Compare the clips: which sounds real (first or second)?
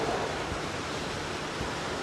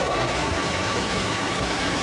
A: first